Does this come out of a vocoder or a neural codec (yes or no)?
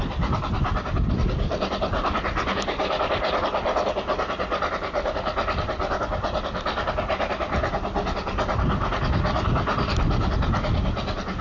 no